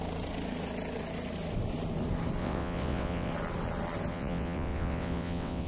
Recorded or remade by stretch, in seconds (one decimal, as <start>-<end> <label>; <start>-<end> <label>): 0.0-2.4 recorded; 2.4-3.3 remade; 3.3-4.1 recorded; 4.1-5.7 remade